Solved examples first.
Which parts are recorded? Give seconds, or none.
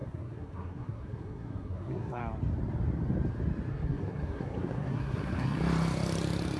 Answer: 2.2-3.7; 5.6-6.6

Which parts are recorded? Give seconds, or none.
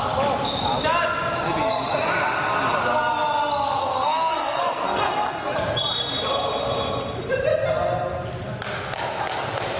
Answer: 0.0-3.8; 5.0-9.8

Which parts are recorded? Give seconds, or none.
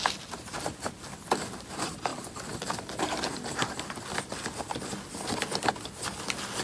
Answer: 0.0-6.6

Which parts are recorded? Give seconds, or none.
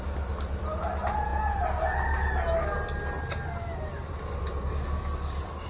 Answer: 0.0-5.7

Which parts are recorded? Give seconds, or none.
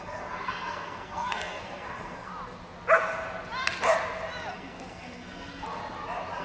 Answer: 2.3-4.5; 5.8-6.4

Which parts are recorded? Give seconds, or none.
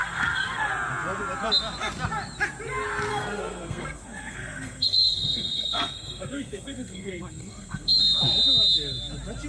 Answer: 0.7-3.1; 8.0-9.5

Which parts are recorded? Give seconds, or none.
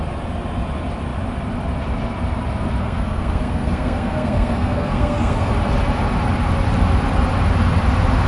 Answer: 0.0-2.8; 5.5-8.3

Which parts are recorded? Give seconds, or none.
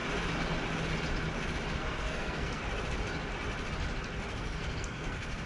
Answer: 0.0-1.8; 2.6-4.3